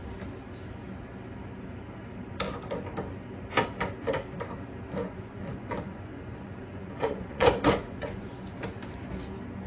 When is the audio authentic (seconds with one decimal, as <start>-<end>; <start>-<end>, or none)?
0.0-5.0; 8.6-9.7